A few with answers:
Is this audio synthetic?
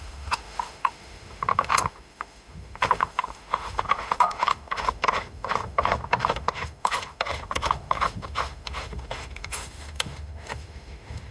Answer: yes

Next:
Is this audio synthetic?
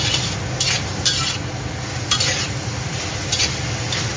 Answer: no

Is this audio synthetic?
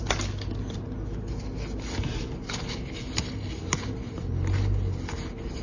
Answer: no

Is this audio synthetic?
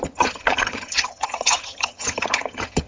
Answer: yes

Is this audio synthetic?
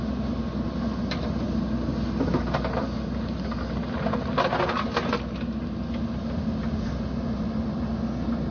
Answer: no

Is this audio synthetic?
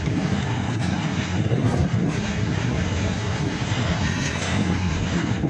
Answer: yes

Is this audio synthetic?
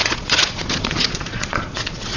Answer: yes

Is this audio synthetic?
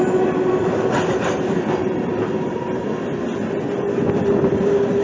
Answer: no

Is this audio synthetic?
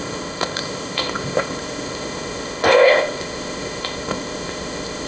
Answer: yes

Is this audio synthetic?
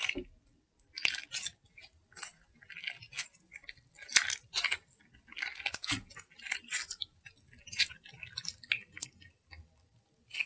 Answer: no